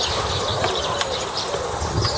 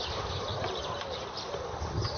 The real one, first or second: first